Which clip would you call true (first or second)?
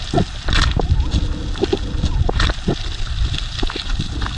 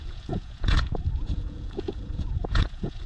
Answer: first